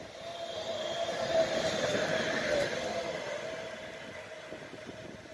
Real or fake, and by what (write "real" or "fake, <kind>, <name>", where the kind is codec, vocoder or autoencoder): real